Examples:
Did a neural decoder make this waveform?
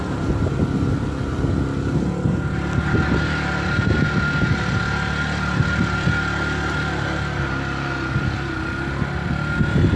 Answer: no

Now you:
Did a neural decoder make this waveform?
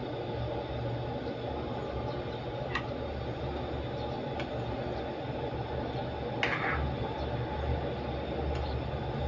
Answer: no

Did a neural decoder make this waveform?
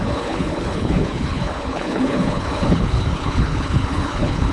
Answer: yes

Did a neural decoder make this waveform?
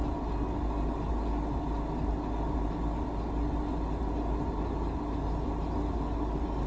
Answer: no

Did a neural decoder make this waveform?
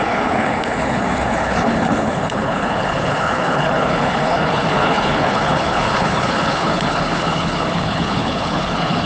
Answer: yes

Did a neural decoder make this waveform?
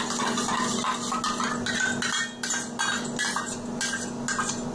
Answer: no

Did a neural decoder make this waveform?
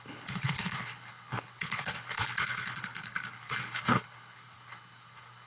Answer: yes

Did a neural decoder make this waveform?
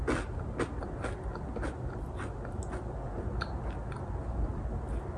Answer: no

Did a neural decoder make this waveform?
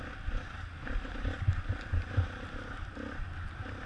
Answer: no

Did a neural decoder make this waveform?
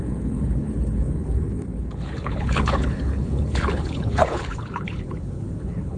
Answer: yes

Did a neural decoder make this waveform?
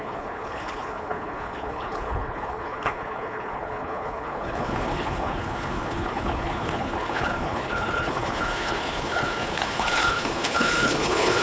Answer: yes